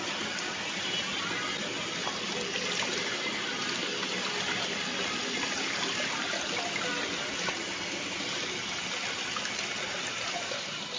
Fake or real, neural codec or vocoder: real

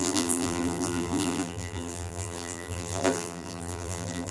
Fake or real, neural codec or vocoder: fake, vocoder, BigVGAN v2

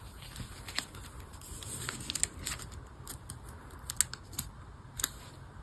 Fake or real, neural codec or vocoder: real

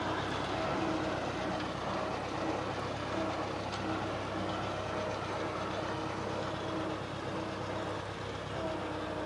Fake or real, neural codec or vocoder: real